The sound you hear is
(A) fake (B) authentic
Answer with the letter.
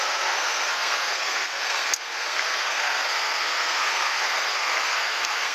A